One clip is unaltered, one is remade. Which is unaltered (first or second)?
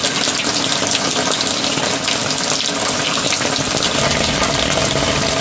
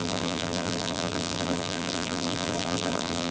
first